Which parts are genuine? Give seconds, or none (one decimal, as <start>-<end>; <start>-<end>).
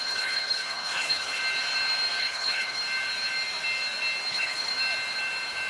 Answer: 1.4-2.2; 2.8-4.3; 4.7-5.7